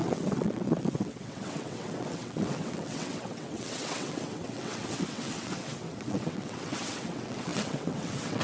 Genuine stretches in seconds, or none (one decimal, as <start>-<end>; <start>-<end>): none